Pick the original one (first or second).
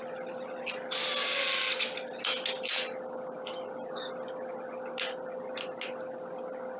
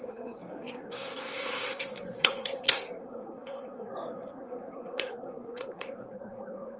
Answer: first